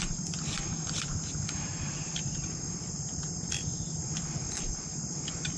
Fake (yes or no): no